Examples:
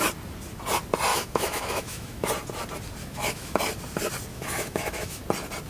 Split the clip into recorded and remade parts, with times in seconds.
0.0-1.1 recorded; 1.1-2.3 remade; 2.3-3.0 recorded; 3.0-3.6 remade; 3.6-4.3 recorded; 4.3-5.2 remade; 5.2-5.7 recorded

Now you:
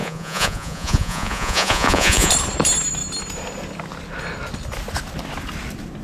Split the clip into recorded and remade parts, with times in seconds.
0.0-2.3 remade; 2.3-6.0 recorded

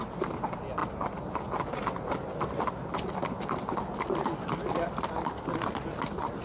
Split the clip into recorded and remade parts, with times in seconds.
0.0-6.4 recorded

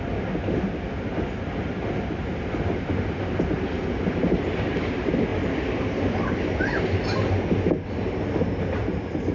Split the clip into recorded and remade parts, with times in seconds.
0.0-9.3 recorded

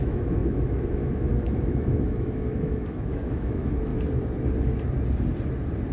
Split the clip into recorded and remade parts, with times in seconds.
0.0-3.9 remade; 3.9-5.9 recorded

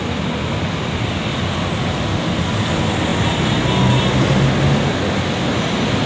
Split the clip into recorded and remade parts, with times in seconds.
0.0-6.1 recorded

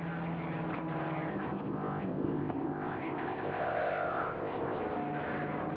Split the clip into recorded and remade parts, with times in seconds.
0.0-1.3 recorded; 1.3-4.8 remade; 4.8-5.8 recorded

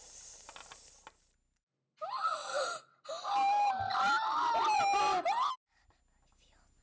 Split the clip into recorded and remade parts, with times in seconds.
0.0-6.8 recorded